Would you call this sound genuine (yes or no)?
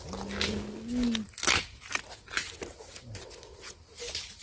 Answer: yes